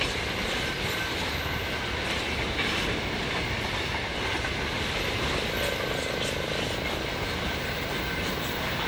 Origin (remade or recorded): recorded